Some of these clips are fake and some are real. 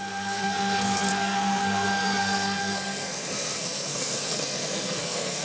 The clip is fake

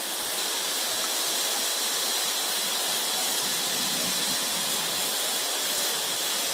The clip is real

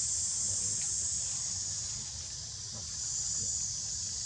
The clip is real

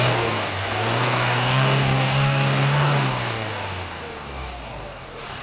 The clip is fake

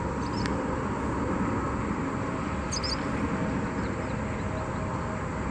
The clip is real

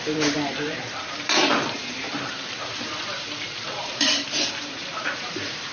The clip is fake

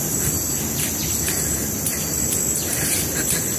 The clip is real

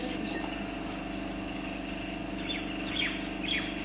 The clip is real